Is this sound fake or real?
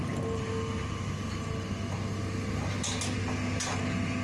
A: real